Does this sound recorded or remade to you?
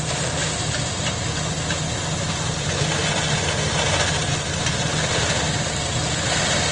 recorded